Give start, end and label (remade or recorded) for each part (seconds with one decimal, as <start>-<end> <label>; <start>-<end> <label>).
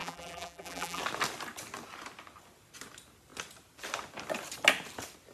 0.0-1.0 remade; 1.0-5.3 recorded